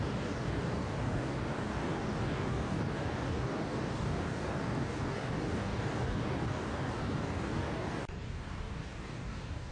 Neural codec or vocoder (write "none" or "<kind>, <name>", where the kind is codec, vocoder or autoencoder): codec, DAC